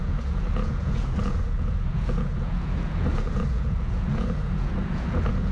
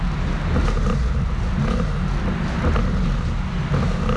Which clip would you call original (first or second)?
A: second